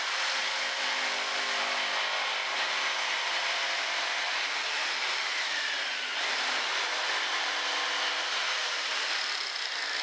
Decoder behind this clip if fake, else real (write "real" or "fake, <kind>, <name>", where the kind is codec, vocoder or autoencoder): real